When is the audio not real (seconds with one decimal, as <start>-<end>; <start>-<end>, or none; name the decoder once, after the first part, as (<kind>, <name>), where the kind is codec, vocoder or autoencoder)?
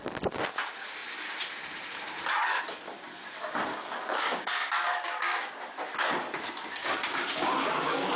3.7-5.5 (codec, DAC); 6.8-8.2